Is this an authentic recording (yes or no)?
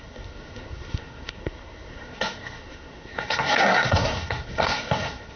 no